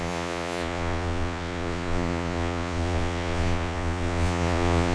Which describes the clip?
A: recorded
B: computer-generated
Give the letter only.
B